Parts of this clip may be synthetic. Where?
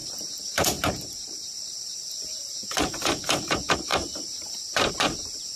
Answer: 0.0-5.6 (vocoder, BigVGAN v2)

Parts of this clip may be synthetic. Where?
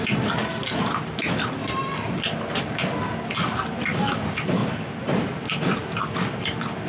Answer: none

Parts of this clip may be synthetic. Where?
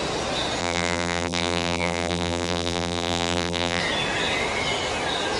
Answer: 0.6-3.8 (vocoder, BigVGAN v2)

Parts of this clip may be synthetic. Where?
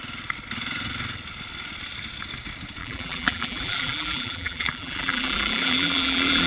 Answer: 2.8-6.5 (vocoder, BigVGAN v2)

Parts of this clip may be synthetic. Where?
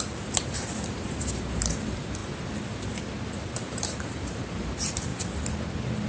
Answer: 0.0-2.2 (vocoder, BigVGAN v2); 3.6-5.1